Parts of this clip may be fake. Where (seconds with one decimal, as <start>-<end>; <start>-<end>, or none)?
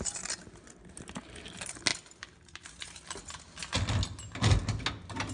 1.9-3.1